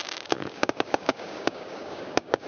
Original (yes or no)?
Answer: no